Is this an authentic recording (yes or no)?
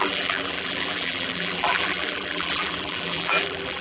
no